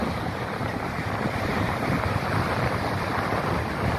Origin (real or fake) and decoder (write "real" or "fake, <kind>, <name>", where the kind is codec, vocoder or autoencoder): real